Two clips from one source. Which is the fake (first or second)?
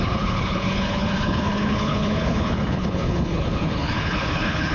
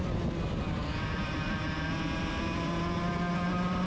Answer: first